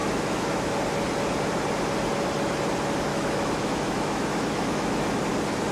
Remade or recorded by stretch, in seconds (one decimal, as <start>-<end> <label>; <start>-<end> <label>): 0.0-0.7 remade; 0.7-3.1 recorded; 3.1-5.2 remade; 5.2-5.7 recorded

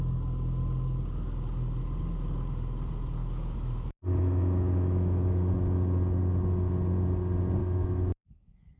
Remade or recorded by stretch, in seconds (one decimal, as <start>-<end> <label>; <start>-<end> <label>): 0.0-3.2 recorded; 3.2-5.5 remade; 5.5-7.6 recorded; 7.6-8.8 remade

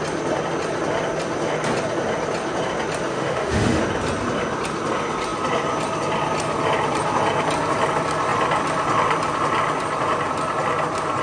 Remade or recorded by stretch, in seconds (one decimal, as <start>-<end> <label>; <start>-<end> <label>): 0.0-3.1 recorded; 3.1-3.8 remade; 3.8-11.2 recorded